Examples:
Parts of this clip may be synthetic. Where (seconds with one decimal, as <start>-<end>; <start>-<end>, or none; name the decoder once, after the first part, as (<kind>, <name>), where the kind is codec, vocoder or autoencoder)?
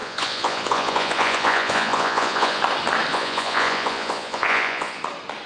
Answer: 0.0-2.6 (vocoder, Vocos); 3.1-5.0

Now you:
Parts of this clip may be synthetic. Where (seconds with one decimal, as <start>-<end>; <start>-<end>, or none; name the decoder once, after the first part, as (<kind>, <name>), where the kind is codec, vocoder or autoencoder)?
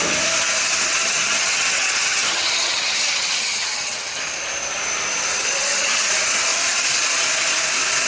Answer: 0.7-4.2 (vocoder, HiFi-GAN); 5.3-6.1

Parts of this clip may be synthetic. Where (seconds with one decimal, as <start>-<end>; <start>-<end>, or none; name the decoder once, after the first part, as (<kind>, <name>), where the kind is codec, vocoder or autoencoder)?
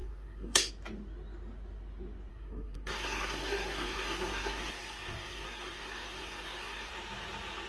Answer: 0.0-0.7 (codec, SNAC); 2.3-6.9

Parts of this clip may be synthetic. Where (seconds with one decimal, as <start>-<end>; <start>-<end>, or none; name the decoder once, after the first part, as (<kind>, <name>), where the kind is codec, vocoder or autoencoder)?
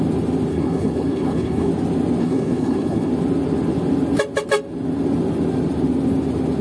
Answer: 0.5-1.7 (codec, HILCodec); 2.2-3.1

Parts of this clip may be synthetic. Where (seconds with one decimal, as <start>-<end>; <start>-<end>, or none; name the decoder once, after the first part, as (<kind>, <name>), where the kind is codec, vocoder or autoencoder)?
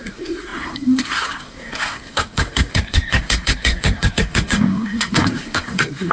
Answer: 0.0-6.1 (codec, SNAC)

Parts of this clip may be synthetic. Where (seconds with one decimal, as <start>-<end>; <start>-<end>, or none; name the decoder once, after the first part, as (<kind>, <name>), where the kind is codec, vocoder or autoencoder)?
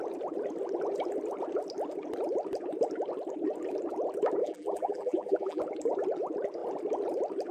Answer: 4.4-5.6 (vocoder, BigVGAN v2)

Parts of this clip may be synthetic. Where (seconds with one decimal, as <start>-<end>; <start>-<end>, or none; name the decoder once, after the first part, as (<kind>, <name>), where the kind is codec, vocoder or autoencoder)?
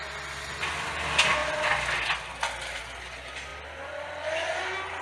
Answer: none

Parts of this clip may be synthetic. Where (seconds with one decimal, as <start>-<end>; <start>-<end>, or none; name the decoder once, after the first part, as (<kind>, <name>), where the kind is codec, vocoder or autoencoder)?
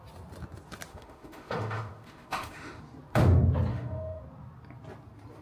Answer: 0.9-2.8 (autoencoder, DAC-VAE); 3.7-4.2